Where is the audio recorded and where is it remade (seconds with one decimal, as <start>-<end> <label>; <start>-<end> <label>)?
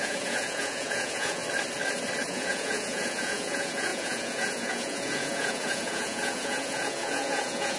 0.0-1.4 remade; 1.4-2.3 recorded; 2.3-7.8 remade